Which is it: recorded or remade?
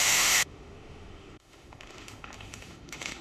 remade